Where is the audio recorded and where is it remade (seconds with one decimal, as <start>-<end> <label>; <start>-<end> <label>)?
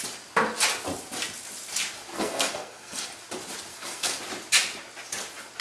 0.0-2.1 recorded; 2.1-3.1 remade; 3.1-3.7 recorded; 3.7-4.2 remade; 4.2-5.6 recorded